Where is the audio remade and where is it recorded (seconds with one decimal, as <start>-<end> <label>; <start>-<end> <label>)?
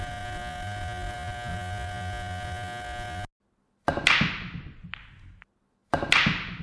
0.0-6.6 recorded